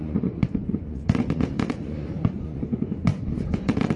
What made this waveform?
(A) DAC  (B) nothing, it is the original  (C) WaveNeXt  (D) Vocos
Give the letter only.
D